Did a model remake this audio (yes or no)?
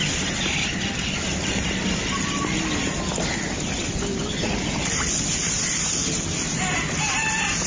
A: no